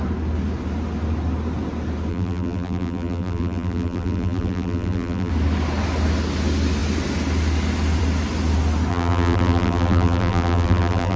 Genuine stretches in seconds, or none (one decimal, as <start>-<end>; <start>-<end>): 0.0-2.1; 5.3-8.9

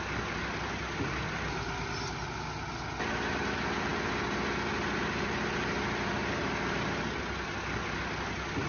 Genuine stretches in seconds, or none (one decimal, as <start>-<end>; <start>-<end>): 0.0-8.7

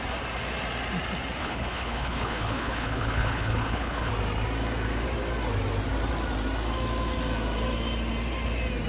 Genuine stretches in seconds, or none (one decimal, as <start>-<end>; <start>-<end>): 0.0-1.4; 4.1-8.9

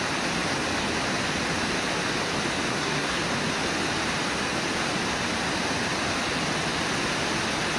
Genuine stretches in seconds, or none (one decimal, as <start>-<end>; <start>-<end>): 0.0-2.7; 3.2-7.8

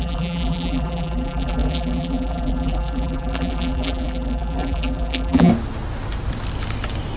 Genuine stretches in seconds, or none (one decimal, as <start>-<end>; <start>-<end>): 5.5-7.2

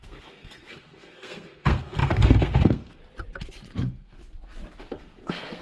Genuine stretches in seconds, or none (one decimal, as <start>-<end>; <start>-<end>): 3.0-3.8; 4.2-4.8